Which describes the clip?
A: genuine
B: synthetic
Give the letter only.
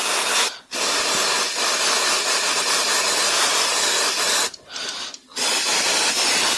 A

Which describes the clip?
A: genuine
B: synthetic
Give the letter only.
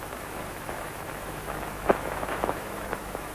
B